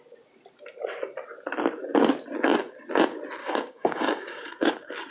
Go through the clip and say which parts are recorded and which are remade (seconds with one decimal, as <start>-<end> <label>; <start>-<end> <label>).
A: 0.0-3.4 recorded; 3.4-5.1 remade

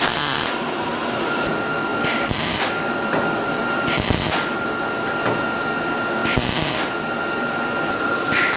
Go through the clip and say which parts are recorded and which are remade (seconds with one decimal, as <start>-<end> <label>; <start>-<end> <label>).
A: 0.0-1.9 recorded; 1.9-4.2 remade; 4.2-8.6 recorded

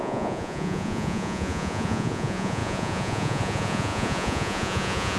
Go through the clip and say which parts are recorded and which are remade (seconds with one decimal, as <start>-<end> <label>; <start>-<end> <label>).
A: 0.0-5.2 remade

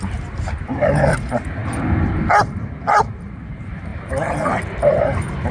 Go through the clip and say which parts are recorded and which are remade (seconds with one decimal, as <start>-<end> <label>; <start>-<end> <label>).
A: 0.0-5.5 recorded

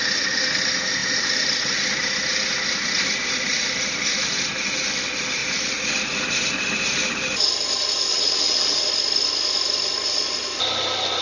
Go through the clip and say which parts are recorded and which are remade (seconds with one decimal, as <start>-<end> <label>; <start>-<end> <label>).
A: 0.0-8.1 recorded; 8.1-8.8 remade; 8.8-11.2 recorded

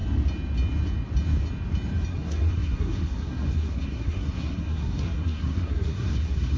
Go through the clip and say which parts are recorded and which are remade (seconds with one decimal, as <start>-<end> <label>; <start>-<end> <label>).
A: 0.0-2.1 recorded; 2.1-6.6 remade